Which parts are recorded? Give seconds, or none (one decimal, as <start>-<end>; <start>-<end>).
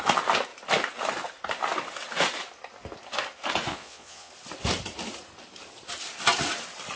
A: 0.0-3.7; 4.3-7.0